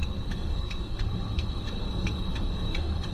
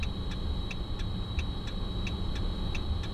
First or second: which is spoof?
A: first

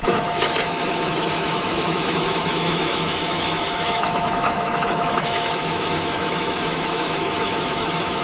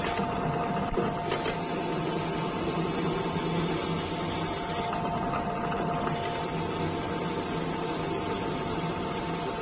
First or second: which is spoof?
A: first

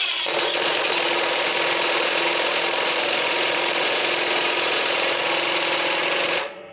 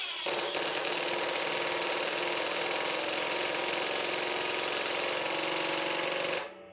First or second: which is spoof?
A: first